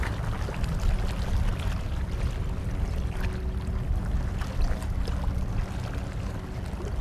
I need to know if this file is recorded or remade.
recorded